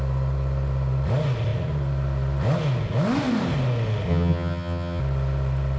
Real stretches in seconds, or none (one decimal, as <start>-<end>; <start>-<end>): 0.0-4.1; 5.0-5.8

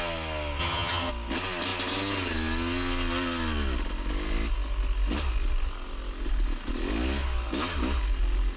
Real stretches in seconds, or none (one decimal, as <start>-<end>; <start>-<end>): 0.0-0.6; 1.1-8.6

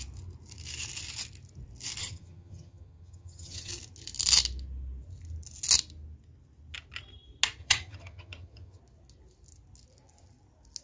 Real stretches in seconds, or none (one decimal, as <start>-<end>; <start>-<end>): 0.0-2.0; 3.7-7.6; 8.8-10.8

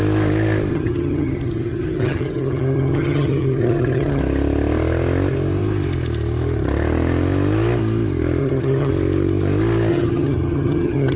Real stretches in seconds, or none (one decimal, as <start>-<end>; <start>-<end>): 0.0-0.7; 4.2-8.4; 8.9-9.9